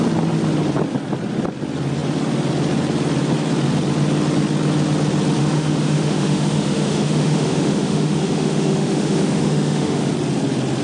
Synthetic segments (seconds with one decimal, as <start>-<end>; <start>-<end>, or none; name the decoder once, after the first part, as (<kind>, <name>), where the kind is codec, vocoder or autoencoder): 5.4-10.1 (autoencoder, DAC-VAE)